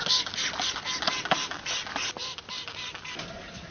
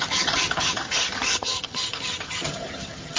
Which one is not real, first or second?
second